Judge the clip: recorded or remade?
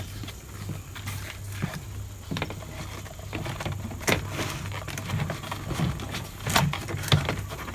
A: recorded